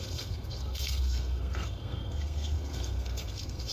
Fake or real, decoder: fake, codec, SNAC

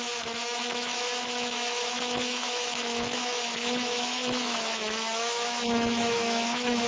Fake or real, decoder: fake, autoencoder, DAC-VAE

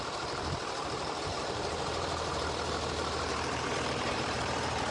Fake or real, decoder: fake, vocoder, BigVGAN v2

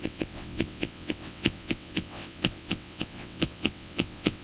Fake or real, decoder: fake, vocoder, WaveNeXt